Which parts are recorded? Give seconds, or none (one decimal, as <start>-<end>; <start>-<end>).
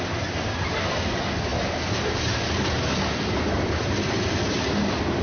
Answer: 0.0-5.2